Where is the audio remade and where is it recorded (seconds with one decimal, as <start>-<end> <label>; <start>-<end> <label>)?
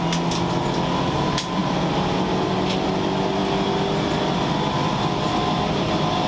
0.0-6.3 recorded